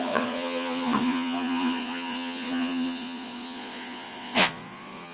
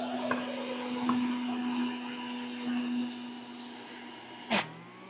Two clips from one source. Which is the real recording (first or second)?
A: second